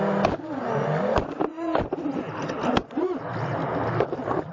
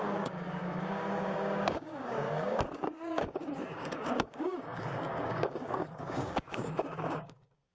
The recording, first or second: first